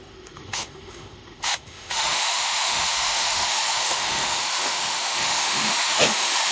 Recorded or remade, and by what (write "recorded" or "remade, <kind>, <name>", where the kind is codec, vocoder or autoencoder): remade, autoencoder, DAC-VAE